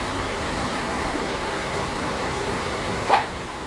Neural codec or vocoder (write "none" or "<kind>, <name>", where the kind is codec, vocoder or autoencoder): codec, SNAC